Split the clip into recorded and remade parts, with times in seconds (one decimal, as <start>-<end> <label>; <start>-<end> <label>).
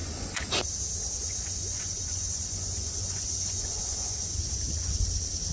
0.0-0.7 remade; 0.7-1.2 recorded; 1.2-4.5 remade; 4.5-5.5 recorded